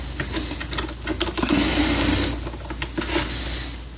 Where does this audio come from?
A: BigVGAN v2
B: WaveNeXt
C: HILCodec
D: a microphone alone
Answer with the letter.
D